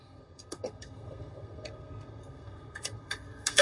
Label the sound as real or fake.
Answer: fake